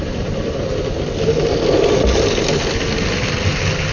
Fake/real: real